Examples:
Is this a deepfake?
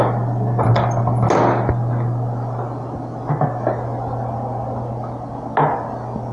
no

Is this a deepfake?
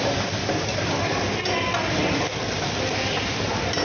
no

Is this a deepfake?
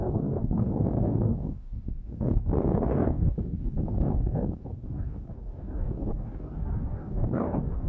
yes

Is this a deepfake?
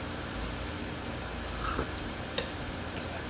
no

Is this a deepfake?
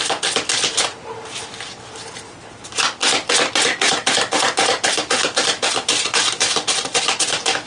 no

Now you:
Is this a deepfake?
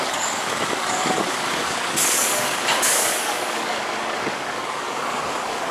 yes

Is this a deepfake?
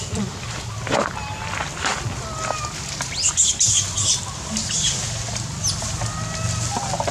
no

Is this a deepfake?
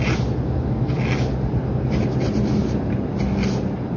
no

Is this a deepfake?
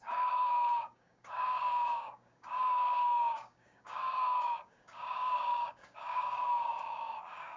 yes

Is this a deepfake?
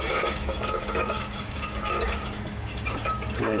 yes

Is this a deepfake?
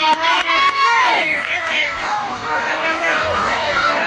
yes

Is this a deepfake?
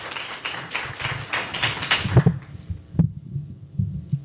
no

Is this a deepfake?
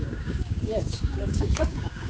yes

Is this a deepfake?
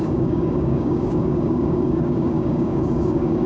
yes